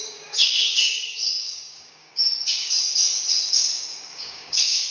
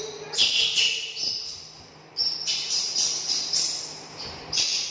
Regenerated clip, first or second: first